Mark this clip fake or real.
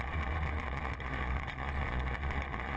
fake